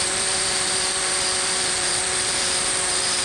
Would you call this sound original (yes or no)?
no